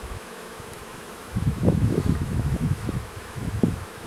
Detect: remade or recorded remade